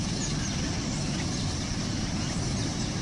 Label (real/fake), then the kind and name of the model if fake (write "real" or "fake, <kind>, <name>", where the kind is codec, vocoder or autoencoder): real